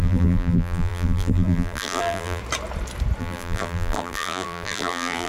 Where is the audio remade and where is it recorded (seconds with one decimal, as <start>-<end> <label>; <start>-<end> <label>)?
0.0-2.4 remade; 2.4-3.2 recorded; 3.2-5.3 remade